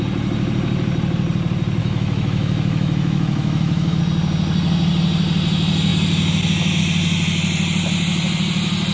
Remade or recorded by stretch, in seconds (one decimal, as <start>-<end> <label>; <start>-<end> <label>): 0.0-1.8 recorded; 1.8-4.0 remade; 4.0-8.9 recorded